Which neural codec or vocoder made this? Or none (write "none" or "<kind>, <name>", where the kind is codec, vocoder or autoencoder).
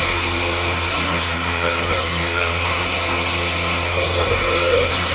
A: codec, SNAC